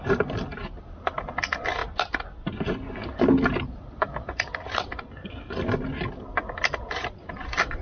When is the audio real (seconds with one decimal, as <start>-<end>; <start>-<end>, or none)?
0.0-7.8